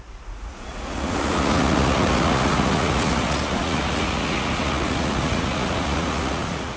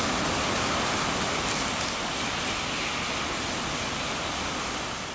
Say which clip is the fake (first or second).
first